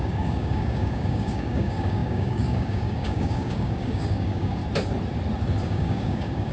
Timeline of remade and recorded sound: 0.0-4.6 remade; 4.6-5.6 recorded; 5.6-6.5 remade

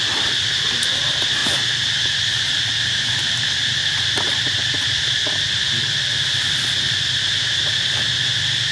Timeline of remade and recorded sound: 0.0-8.7 recorded